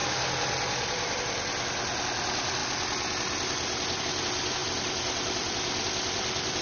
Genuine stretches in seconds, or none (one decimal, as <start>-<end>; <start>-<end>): 0.0-6.6